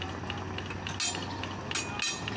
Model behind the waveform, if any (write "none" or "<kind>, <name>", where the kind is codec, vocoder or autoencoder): none